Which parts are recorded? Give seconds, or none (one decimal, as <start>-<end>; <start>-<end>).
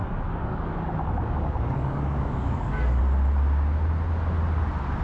3.0-5.0